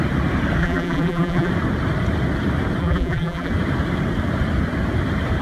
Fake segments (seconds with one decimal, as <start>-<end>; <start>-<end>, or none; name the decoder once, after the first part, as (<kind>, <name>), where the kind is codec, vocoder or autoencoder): 0.6-1.5 (vocoder, BigVGAN v2); 2.8-3.5